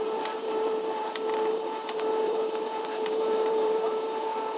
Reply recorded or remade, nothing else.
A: remade